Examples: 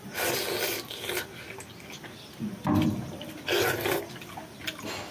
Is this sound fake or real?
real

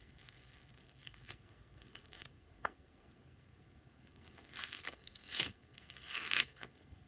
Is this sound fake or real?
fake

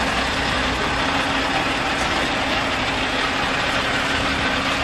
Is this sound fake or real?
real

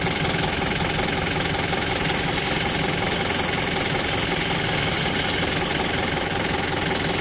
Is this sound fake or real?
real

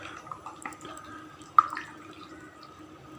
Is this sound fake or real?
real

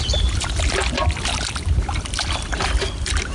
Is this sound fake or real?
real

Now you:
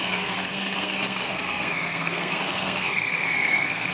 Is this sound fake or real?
fake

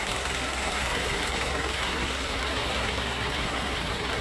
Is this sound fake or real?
fake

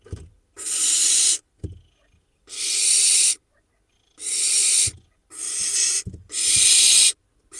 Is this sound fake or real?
real